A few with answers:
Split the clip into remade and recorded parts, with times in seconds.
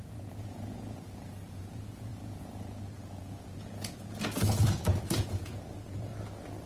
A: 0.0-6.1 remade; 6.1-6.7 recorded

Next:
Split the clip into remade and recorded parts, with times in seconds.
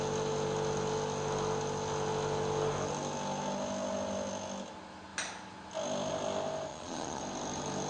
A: 0.0-6.7 recorded; 6.7-7.2 remade; 7.2-7.9 recorded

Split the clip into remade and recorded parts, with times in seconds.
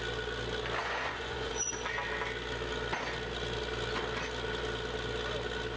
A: 0.0-0.8 recorded; 0.8-1.5 remade; 1.5-5.8 recorded